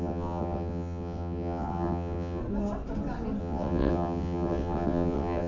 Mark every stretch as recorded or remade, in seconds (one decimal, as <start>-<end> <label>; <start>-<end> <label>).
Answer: 0.0-2.4 remade; 2.4-3.4 recorded; 3.4-5.5 remade